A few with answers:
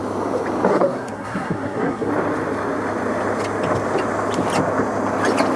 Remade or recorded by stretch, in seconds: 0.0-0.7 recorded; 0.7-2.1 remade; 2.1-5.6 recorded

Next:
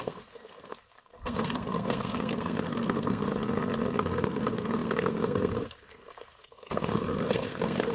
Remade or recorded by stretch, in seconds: 0.0-3.3 remade; 3.3-4.0 recorded; 4.0-7.9 remade

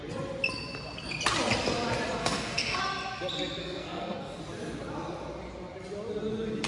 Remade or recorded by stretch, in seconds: 0.0-2.2 recorded; 2.2-2.8 remade; 2.8-3.6 recorded; 3.6-4.4 remade; 4.4-6.7 recorded

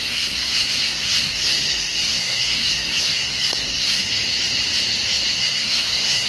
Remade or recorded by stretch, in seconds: 0.0-4.0 remade; 4.0-5.4 recorded; 5.4-6.3 remade